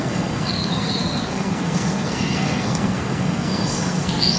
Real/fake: fake